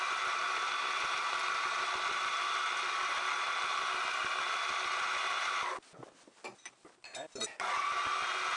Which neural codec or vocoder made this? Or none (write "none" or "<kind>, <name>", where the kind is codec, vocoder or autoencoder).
none